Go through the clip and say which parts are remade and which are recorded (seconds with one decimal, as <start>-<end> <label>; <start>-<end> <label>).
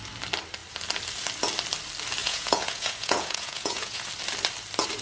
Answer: 0.0-2.2 recorded; 2.2-4.1 remade; 4.1-5.0 recorded